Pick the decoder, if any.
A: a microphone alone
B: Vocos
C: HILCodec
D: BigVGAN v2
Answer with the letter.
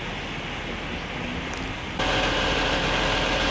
A